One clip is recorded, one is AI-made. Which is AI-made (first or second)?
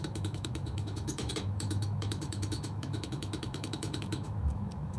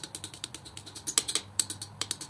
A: first